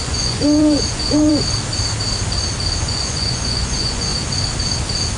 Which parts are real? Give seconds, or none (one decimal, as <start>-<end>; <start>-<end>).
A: 1.4-2.8; 4.1-5.2